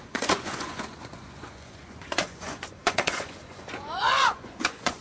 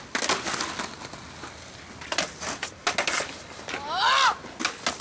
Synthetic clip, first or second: first